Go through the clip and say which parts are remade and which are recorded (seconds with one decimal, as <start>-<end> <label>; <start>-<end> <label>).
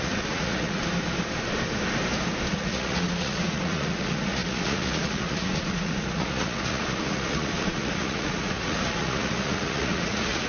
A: 0.0-0.8 remade; 0.8-2.5 recorded; 2.5-10.5 remade